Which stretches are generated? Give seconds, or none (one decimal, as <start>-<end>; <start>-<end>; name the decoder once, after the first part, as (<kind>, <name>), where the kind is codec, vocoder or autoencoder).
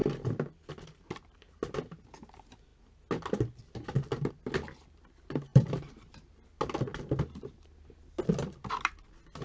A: 5.5-6.3 (vocoder, BigVGAN v2)